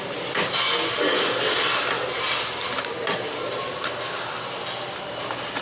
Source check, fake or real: real